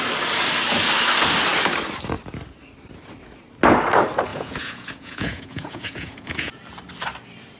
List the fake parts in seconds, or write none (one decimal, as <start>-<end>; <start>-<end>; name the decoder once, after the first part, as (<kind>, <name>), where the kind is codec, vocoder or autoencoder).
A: 4.3-6.6 (vocoder, Vocos)